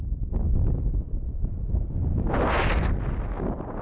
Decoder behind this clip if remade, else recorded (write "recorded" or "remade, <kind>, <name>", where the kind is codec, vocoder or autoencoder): recorded